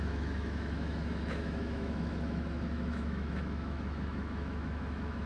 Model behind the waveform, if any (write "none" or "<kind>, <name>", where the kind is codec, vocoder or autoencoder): autoencoder, DAC-VAE